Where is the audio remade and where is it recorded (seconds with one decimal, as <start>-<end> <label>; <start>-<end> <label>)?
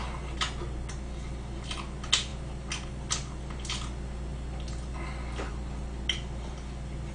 0.0-7.1 recorded